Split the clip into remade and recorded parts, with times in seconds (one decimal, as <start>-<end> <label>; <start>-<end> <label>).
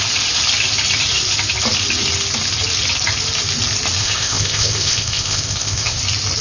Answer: 0.0-4.0 recorded; 4.0-6.0 remade; 6.0-6.4 recorded